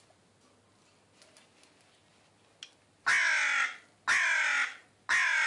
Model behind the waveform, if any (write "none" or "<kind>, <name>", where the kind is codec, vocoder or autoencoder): none